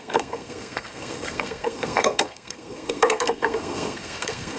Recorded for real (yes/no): no